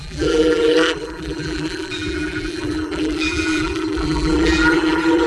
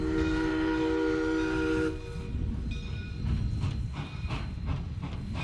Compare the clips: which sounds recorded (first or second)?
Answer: second